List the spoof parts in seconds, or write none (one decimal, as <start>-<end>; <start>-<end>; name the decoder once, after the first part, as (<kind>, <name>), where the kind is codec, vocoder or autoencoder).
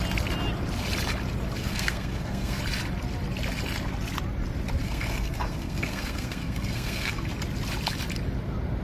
1.6-2.6 (codec, SNAC); 4.8-7.3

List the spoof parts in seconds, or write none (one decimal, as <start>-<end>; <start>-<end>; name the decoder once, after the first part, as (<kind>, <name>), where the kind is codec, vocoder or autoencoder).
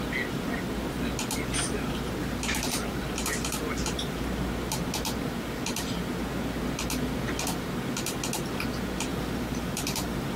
2.2-4.2 (vocoder, BigVGAN v2); 9.1-10.4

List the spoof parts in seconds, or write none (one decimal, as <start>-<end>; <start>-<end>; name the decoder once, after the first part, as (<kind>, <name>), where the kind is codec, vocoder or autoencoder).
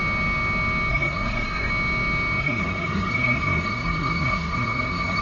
0.9-1.7 (codec, SNAC); 2.4-5.2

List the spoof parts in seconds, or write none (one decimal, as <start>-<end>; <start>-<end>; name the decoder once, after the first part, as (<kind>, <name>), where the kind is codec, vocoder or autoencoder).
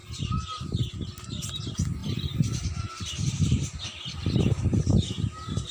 2.0-3.8 (vocoder, BigVGAN v2)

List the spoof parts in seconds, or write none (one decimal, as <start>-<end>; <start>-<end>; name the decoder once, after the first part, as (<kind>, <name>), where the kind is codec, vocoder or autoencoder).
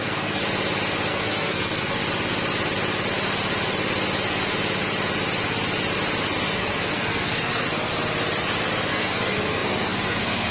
0.0-0.4 (codec, SNAC); 1.1-2.0; 6.6-7.9; 8.9-10.5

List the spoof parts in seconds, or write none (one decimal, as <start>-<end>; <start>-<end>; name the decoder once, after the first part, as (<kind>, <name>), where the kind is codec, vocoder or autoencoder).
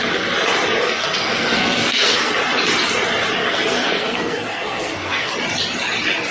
0.8-2.3 (codec, SNAC); 3.4-5.3